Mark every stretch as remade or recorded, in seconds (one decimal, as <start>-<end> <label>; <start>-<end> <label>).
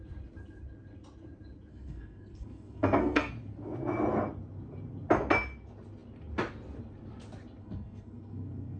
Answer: 0.0-1.7 recorded; 1.7-3.3 remade; 3.3-7.6 recorded; 7.6-8.8 remade